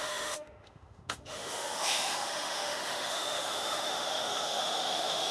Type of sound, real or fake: fake